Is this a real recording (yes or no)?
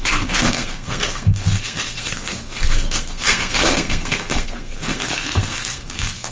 no